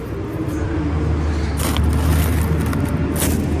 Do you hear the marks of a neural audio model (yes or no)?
no